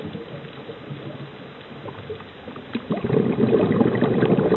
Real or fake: real